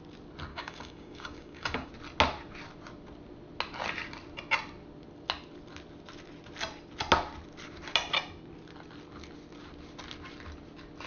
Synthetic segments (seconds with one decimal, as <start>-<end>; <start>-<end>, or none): 0.5-1.9